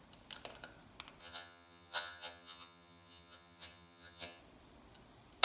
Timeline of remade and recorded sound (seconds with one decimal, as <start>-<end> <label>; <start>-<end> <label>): 0.0-1.2 recorded; 1.2-4.4 remade; 4.4-5.4 recorded